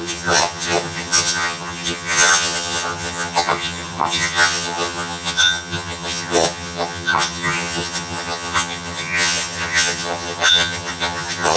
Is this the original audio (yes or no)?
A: no